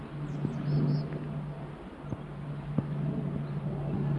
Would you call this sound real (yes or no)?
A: yes